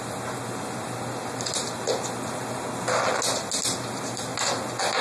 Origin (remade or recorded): recorded